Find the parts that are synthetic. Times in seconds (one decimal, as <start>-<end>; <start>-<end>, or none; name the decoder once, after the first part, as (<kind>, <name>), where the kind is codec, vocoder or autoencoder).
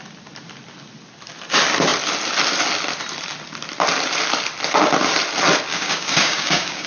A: 5.7-6.9 (codec, DAC)